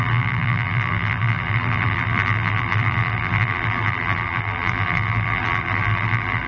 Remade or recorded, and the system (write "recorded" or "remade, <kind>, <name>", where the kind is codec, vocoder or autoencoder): remade, vocoder, BigVGAN v2